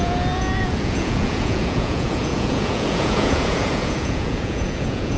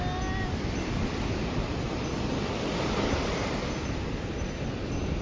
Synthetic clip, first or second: first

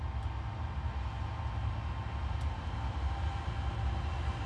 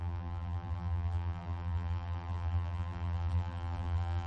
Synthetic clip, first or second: second